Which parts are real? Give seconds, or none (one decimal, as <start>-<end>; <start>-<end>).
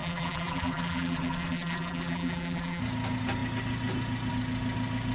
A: 2.8-5.1